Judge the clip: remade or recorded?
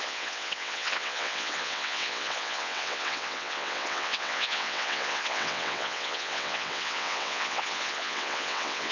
remade